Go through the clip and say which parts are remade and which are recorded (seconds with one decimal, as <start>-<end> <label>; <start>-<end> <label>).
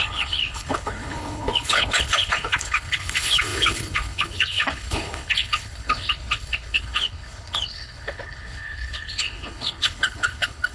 0.0-10.7 remade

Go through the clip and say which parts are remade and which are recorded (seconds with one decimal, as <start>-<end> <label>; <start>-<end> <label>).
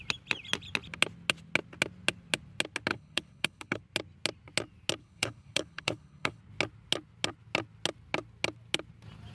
0.0-2.9 recorded; 2.9-3.8 remade; 3.8-5.0 recorded; 5.0-6.4 remade; 6.4-9.3 recorded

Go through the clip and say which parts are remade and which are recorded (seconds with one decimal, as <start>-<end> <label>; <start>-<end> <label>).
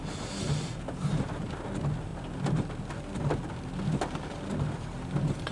0.0-5.5 recorded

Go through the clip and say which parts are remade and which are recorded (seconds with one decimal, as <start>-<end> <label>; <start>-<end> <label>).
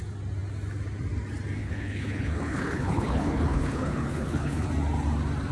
0.0-1.6 recorded; 1.6-4.7 remade; 4.7-5.5 recorded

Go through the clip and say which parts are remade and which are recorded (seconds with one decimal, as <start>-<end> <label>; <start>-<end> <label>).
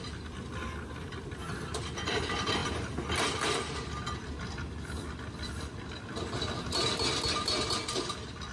0.0-8.5 recorded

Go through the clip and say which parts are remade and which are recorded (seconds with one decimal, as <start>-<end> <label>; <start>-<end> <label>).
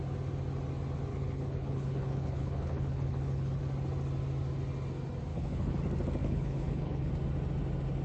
0.0-1.1 recorded; 1.1-3.6 remade; 3.6-5.3 recorded; 5.3-5.8 remade; 5.8-6.2 recorded; 6.2-7.1 remade; 7.1-8.0 recorded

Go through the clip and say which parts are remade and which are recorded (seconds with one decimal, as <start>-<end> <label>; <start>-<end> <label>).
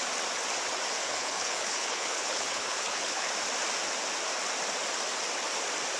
0.0-1.0 recorded; 1.0-3.3 remade; 3.3-6.0 recorded